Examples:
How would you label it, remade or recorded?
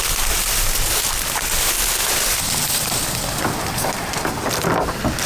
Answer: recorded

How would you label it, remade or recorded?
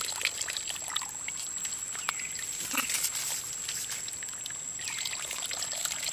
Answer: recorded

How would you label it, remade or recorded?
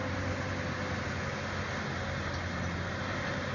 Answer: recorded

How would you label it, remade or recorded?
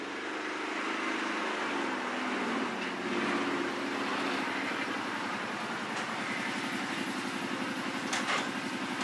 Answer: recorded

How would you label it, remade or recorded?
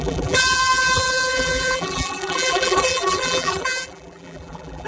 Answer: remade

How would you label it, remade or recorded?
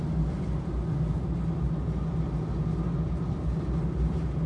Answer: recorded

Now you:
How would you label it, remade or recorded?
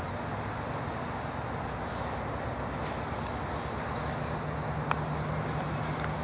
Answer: recorded